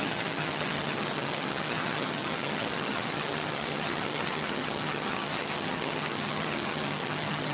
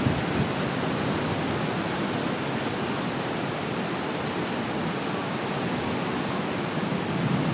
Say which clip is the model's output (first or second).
first